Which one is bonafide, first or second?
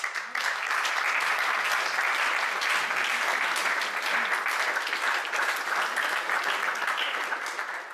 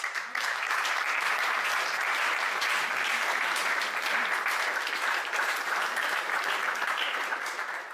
first